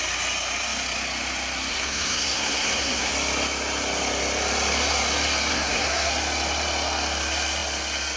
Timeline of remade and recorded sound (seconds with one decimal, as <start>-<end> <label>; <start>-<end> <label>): 0.0-1.7 recorded; 1.7-3.1 remade; 3.1-5.5 recorded; 5.5-6.1 remade; 6.1-8.2 recorded